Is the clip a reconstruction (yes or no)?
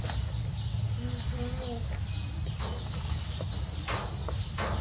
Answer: no